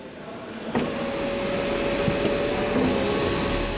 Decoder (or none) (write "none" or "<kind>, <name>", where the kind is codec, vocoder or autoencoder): none